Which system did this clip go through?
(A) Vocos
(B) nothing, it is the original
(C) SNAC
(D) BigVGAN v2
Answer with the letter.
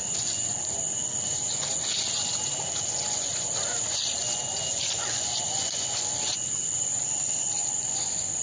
A